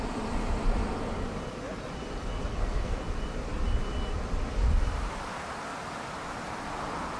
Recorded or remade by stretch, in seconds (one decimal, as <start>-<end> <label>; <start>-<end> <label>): 0.0-2.5 recorded; 2.5-3.0 remade; 3.0-7.2 recorded